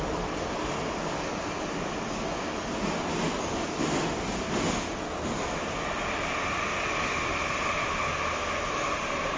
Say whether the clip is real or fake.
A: real